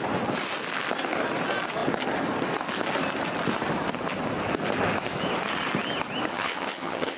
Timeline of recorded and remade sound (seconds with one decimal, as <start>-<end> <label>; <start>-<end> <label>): 0.0-6.3 recorded; 6.3-7.2 remade